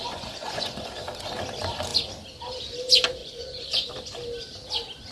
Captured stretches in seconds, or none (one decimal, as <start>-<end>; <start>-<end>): 0.9-3.2; 3.9-5.1